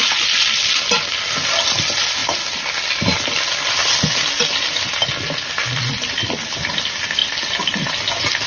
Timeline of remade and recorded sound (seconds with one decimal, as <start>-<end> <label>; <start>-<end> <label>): 0.0-7.2 recorded; 7.2-7.9 remade; 7.9-8.5 recorded